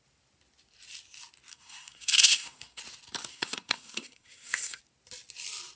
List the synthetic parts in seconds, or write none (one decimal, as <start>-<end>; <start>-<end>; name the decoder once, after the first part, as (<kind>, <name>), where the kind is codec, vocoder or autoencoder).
1.5-2.8 (codec, SNAC); 3.3-4.8